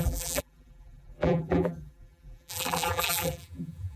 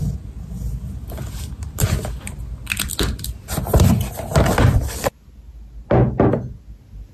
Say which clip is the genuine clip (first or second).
second